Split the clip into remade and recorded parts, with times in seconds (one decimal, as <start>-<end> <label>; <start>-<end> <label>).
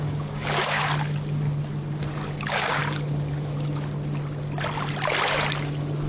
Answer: 0.0-0.9 remade; 0.9-2.3 recorded; 2.3-2.8 remade; 2.8-6.1 recorded